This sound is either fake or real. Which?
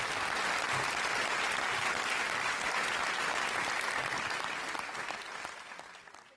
real